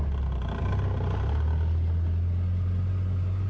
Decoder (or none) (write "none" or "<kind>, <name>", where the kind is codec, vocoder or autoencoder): none